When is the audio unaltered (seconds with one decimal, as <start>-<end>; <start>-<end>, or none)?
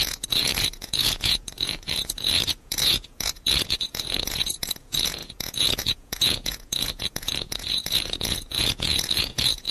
none